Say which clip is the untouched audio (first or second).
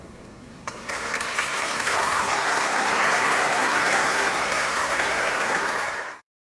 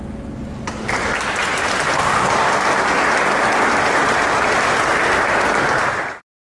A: second